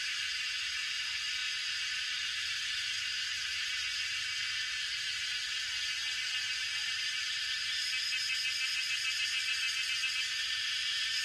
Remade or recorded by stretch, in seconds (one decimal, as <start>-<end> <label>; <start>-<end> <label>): 0.0-6.0 remade; 6.0-6.6 recorded; 6.6-11.2 remade